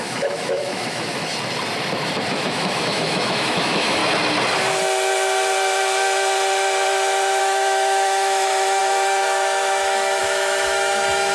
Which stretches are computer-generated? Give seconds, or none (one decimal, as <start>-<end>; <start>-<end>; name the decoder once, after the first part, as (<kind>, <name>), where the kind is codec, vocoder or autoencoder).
0.0-1.3 (autoencoder, DAC-VAE); 2.3-4.0; 7.4-11.3